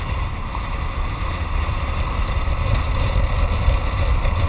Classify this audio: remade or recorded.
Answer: recorded